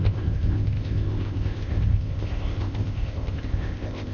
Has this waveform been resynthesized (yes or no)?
yes